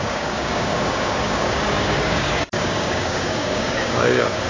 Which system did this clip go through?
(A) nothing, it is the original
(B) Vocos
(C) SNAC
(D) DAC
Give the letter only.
D